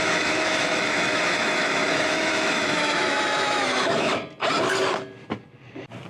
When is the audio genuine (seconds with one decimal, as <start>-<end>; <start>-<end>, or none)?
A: 4.1-6.1